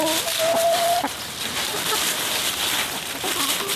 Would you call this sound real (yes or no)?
no